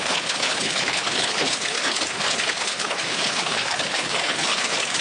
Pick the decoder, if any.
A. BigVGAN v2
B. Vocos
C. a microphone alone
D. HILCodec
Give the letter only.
D